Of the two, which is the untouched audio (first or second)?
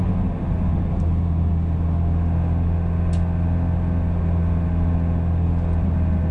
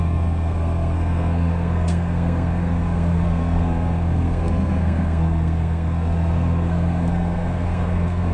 first